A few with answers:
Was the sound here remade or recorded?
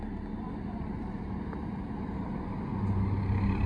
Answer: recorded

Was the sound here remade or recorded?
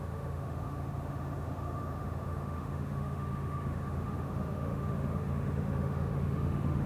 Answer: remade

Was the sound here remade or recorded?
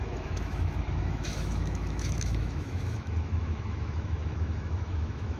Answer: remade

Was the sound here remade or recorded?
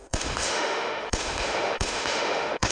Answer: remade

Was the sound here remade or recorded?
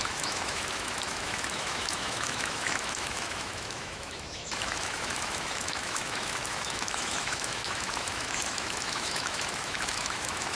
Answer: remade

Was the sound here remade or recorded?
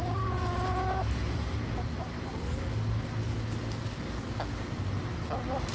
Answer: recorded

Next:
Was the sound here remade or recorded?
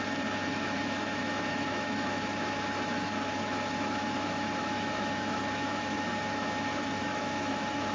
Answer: remade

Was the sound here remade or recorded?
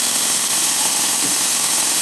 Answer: remade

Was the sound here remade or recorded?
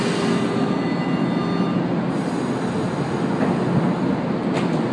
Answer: recorded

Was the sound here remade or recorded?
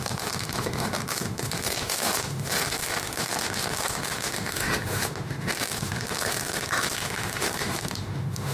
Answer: remade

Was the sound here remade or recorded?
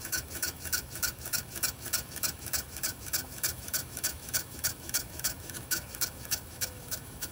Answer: remade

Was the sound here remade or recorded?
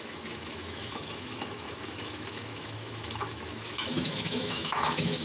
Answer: remade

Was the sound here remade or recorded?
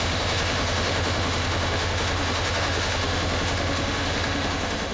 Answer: remade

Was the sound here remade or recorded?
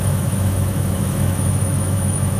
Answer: remade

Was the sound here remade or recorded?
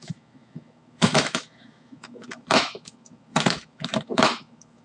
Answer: remade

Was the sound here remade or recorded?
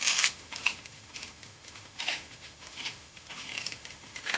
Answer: remade